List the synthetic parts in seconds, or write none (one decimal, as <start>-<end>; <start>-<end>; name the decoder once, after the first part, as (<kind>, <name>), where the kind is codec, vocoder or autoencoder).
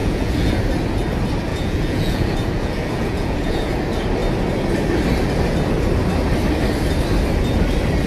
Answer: 0.0-0.6 (vocoder, Vocos); 1.5-3.7